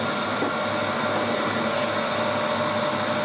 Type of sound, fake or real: real